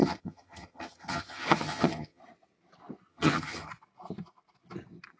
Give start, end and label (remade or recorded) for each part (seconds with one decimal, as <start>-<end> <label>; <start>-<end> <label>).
0.0-2.2 remade; 2.2-3.1 recorded; 3.1-3.7 remade; 3.7-5.2 recorded